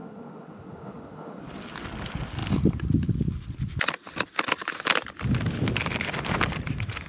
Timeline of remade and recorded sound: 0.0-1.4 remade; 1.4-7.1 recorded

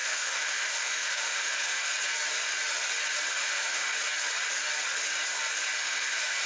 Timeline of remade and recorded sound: 0.0-1.9 remade; 1.9-3.3 recorded; 3.3-3.9 remade; 3.9-5.8 recorded; 5.8-6.5 remade

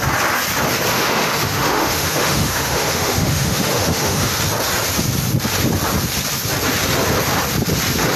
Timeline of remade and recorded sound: 0.0-0.9 recorded; 0.9-4.4 remade; 4.4-8.2 recorded

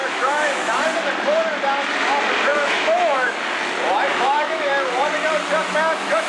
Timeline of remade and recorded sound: 0.0-0.7 remade; 0.7-2.5 recorded; 2.5-3.4 remade; 3.4-4.1 recorded; 4.1-4.7 remade; 4.7-5.6 recorded; 5.6-6.3 remade

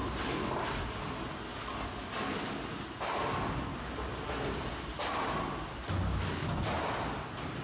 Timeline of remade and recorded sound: 0.0-7.6 recorded

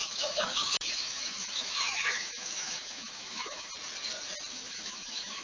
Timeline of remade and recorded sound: 0.0-3.7 remade; 3.7-4.5 recorded; 4.5-5.4 remade